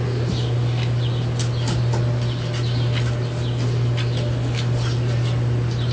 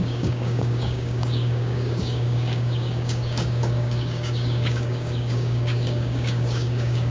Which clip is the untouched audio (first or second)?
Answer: first